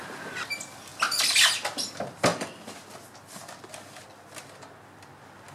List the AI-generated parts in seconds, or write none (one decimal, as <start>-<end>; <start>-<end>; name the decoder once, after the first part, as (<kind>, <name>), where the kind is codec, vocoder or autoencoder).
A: none